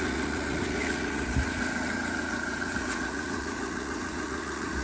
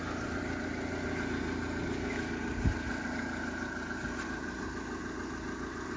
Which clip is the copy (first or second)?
first